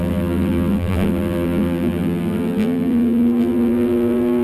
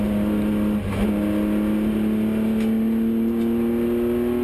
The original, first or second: second